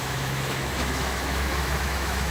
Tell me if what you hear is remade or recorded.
remade